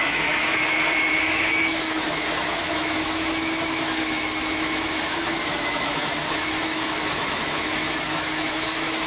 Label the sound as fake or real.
fake